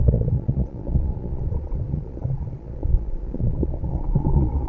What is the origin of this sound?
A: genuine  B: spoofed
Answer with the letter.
B